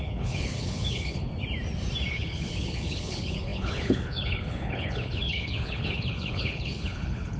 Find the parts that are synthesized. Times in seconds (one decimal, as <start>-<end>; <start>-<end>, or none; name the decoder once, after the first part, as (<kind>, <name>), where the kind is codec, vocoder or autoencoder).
0.0-1.3 (codec, HILCodec); 2.1-7.4